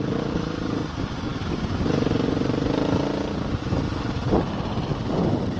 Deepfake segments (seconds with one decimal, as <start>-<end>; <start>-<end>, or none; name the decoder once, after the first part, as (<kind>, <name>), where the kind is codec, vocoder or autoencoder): none